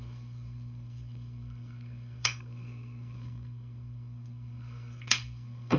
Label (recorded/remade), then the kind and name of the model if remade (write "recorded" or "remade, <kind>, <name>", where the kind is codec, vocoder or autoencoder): remade, codec, SNAC